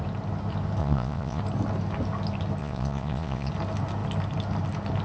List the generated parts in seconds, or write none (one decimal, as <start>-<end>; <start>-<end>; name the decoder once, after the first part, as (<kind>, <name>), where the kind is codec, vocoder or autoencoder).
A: 0.8-1.4 (vocoder, Vocos); 2.6-3.5